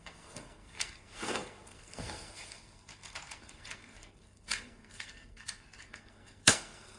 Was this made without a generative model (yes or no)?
no